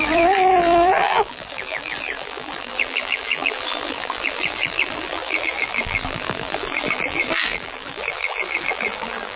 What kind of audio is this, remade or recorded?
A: remade